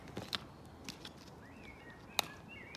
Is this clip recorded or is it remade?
recorded